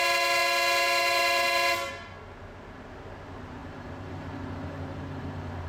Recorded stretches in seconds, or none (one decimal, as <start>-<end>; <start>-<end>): 0.0-3.6

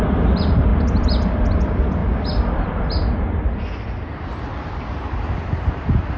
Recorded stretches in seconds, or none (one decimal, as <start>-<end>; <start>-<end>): 0.0-6.2

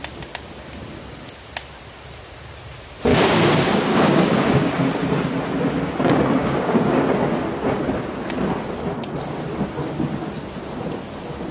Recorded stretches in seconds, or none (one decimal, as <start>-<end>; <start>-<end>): 0.0-3.1; 4.7-6.4; 7.0-11.5

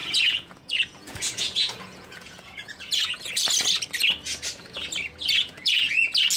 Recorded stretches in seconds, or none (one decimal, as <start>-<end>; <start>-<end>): 3.3-5.4; 6.0-6.4